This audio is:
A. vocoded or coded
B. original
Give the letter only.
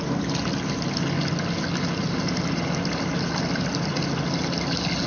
B